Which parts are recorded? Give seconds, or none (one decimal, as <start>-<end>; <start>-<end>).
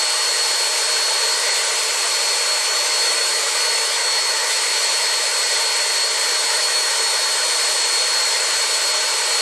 0.0-2.5; 5.3-6.4; 7.5-9.4